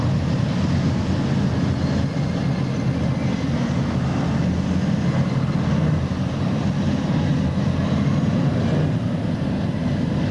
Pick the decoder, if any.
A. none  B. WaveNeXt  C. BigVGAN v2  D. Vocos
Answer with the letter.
A